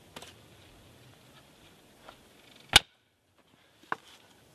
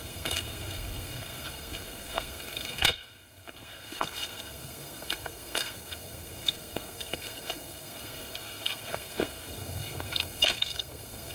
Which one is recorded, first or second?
first